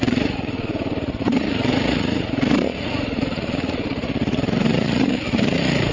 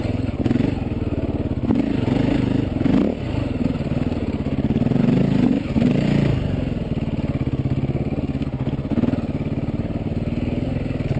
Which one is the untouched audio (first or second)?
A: second